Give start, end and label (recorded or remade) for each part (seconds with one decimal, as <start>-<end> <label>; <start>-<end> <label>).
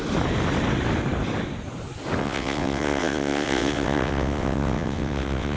0.0-2.2 recorded; 2.2-5.6 remade